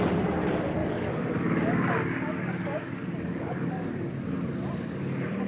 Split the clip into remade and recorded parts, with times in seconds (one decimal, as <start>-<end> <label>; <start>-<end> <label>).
0.0-0.8 recorded; 0.8-4.1 remade; 4.1-5.5 recorded